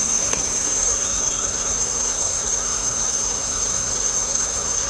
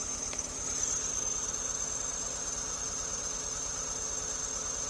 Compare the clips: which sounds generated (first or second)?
first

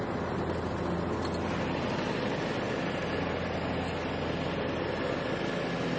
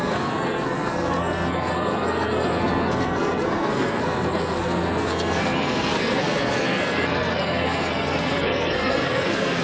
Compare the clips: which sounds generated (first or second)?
second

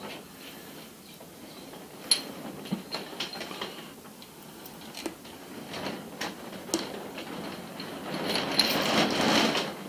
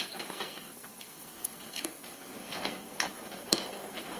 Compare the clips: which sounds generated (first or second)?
second